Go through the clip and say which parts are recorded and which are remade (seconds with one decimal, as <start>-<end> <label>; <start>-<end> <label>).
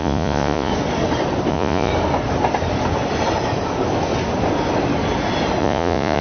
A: 0.0-0.7 remade; 0.7-1.5 recorded; 1.5-1.9 remade; 1.9-5.6 recorded; 5.6-6.2 remade